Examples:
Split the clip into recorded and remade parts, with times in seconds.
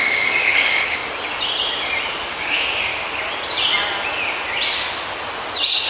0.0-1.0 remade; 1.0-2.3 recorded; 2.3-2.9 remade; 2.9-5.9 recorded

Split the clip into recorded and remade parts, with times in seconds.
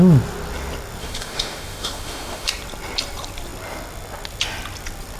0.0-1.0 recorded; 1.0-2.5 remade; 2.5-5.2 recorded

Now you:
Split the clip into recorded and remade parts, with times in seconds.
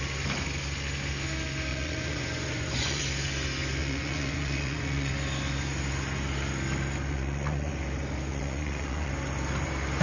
0.0-1.7 recorded; 1.7-3.0 remade; 3.0-3.8 recorded; 3.8-5.1 remade; 5.1-7.1 recorded; 7.1-7.7 remade; 7.7-8.3 recorded; 8.3-9.1 remade; 9.1-10.0 recorded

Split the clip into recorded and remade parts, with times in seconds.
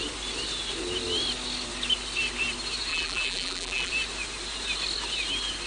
0.0-2.9 recorded; 2.9-3.9 remade; 3.9-5.7 recorded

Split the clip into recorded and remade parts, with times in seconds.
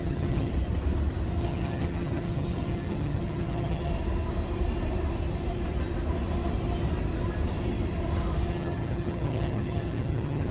0.0-0.5 remade; 0.5-1.4 recorded; 1.4-3.9 remade; 3.9-8.5 recorded; 8.5-10.5 remade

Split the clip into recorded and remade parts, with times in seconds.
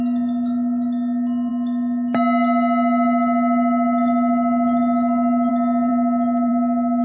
0.0-7.0 recorded